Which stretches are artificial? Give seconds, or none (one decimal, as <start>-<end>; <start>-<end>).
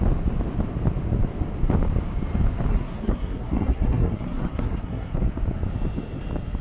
2.7-5.2